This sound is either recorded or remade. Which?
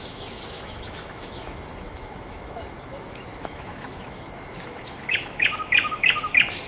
remade